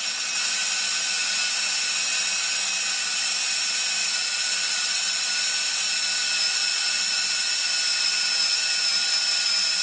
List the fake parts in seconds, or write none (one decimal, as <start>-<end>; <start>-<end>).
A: 4.0-5.2; 6.5-7.7